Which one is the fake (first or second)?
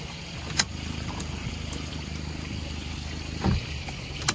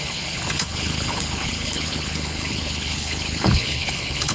second